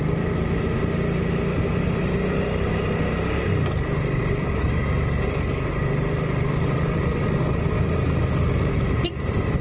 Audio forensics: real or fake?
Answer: real